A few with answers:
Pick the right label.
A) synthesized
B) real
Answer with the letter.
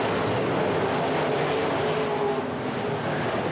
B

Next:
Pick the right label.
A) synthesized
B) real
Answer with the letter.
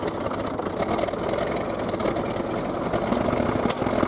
B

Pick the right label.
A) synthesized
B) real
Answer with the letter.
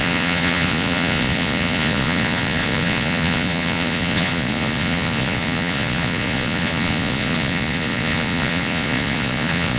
A